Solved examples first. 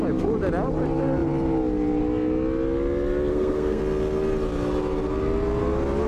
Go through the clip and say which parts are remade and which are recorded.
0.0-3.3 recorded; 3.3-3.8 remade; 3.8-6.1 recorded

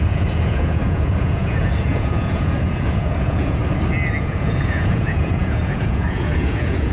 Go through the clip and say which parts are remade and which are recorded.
0.0-3.6 remade; 3.6-4.2 recorded; 4.2-6.9 remade

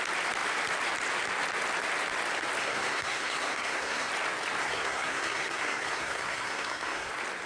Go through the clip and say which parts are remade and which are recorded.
0.0-2.6 recorded; 2.6-4.1 remade; 4.1-4.6 recorded; 4.6-7.1 remade; 7.1-7.5 recorded

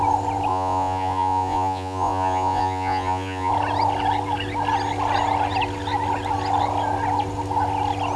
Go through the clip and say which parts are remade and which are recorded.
0.0-0.5 recorded; 0.5-3.5 remade; 3.5-8.2 recorded

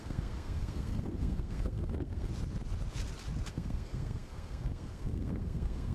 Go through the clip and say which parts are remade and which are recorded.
0.0-2.3 remade; 2.3-3.5 recorded; 3.5-5.9 remade

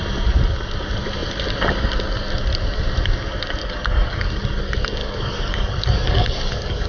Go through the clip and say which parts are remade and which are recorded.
0.0-3.6 recorded; 3.6-4.3 remade; 4.3-5.0 recorded; 5.0-6.9 remade

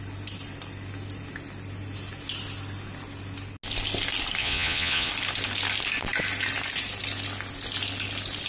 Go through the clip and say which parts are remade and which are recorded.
0.0-4.4 recorded; 4.4-5.1 remade; 5.1-8.5 recorded